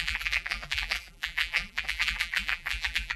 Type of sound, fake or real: fake